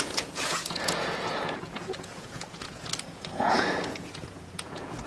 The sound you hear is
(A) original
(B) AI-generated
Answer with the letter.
B